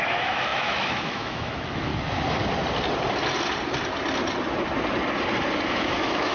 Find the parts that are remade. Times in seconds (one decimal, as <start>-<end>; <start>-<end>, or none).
0.0-1.9; 5.7-6.3